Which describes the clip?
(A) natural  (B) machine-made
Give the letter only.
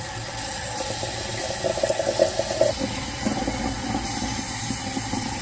A